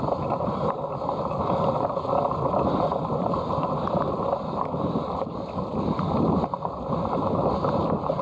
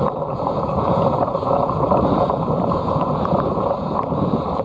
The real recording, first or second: first